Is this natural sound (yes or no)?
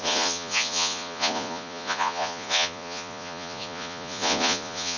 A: no